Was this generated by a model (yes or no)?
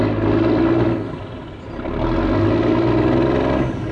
no